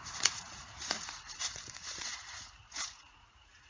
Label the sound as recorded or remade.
remade